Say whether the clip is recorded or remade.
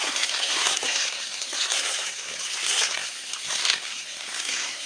remade